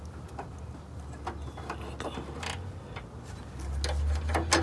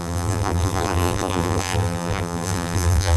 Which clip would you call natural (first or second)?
first